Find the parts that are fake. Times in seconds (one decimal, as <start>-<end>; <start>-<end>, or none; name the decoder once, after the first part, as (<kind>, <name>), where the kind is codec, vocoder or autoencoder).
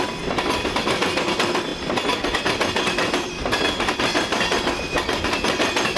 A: none